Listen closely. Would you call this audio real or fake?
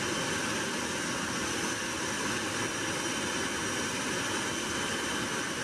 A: real